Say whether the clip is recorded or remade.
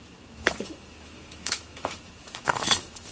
remade